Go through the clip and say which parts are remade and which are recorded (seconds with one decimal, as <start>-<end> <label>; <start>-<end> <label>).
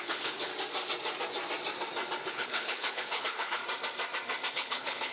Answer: 0.0-0.5 remade; 0.5-2.3 recorded; 2.3-3.6 remade; 3.6-4.5 recorded; 4.5-5.1 remade